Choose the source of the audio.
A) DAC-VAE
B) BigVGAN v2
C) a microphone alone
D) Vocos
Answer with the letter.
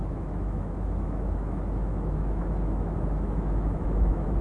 A